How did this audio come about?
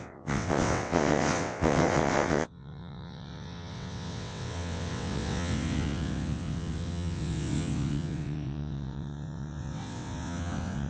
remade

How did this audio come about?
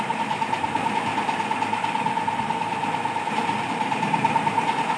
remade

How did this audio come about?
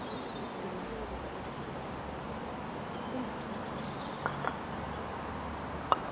recorded